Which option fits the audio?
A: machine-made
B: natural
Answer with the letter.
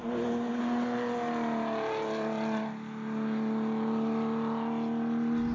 B